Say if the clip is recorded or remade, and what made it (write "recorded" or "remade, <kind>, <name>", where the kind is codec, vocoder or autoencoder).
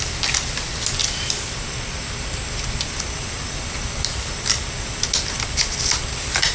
recorded